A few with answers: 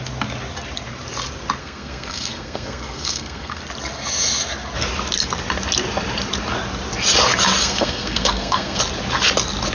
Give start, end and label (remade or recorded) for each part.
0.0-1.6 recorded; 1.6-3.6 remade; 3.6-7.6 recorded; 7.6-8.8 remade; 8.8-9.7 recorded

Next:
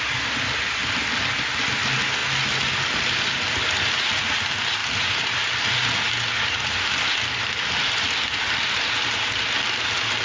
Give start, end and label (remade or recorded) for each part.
0.0-10.2 recorded

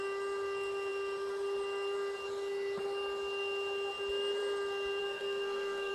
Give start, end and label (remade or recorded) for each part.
0.0-5.0 recorded; 5.0-5.9 remade

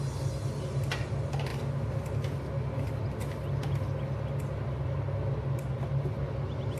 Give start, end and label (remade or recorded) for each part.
0.0-6.8 recorded

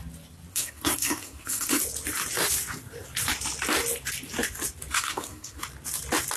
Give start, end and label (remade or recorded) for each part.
0.0-0.5 recorded; 0.5-1.8 remade; 1.8-4.9 recorded; 4.9-5.6 remade; 5.6-6.4 recorded

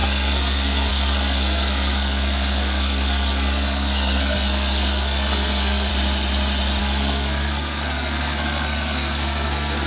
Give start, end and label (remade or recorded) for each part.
0.0-5.9 remade; 5.9-6.8 recorded; 6.8-9.9 remade

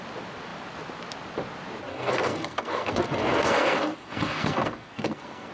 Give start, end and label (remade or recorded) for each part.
0.0-1.9 recorded; 1.9-5.5 remade

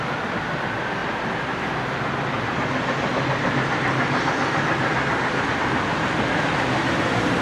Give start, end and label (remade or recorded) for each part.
0.0-7.4 recorded